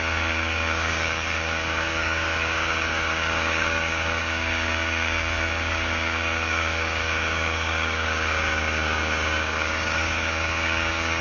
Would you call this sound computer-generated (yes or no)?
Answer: yes